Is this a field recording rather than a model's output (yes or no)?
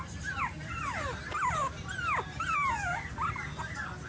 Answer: yes